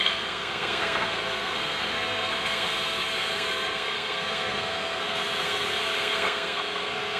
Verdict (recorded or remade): remade